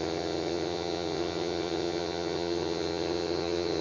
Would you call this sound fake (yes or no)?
yes